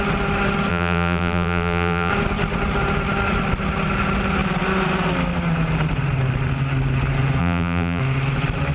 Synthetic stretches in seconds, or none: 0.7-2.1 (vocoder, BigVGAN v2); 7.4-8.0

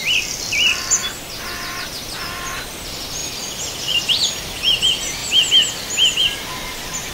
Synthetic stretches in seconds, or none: 3.2-4.4 (vocoder, BigVGAN v2); 5.2-7.1

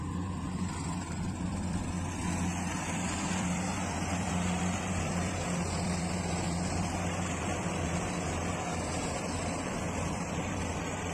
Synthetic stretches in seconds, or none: 0.0-1.8 (vocoder, BigVGAN v2); 2.8-11.1

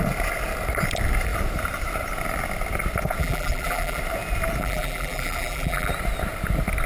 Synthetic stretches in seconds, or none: 3.2-4.0 (vocoder, BigVGAN v2); 4.6-5.9

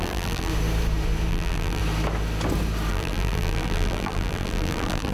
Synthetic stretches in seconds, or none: 0.0-0.5 (vocoder, BigVGAN v2); 1.3-1.8; 2.9-5.1

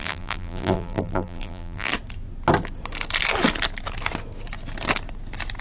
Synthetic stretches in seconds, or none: 0.0-1.9 (vocoder, BigVGAN v2)

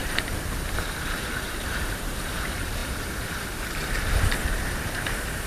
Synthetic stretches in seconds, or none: 0.0-5.5 (vocoder, BigVGAN v2)

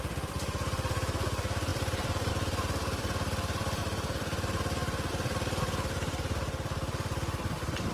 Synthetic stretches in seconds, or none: 0.0-3.8 (vocoder, BigVGAN v2); 5.1-7.9